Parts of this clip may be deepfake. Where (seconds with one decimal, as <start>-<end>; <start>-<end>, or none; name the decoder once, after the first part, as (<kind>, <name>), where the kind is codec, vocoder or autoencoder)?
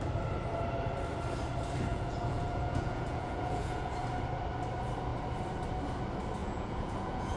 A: 1.9-3.9 (vocoder, Vocos); 6.4-7.4